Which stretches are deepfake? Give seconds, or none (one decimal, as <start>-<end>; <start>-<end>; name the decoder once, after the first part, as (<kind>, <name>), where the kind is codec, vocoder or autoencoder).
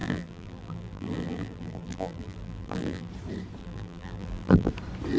0.0-3.1 (vocoder, BigVGAN v2); 3.6-4.7